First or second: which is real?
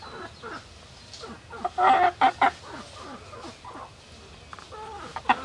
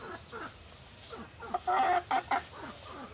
first